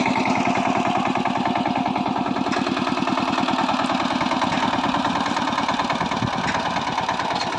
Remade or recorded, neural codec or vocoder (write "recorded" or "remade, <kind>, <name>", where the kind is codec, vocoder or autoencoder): recorded